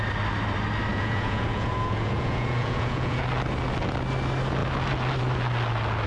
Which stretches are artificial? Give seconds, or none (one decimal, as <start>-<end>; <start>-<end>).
0.9-3.2